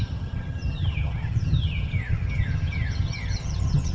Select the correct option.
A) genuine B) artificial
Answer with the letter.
B